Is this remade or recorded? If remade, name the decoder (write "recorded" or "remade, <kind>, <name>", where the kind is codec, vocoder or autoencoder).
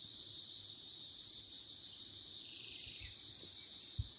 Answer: remade, vocoder, BigVGAN v2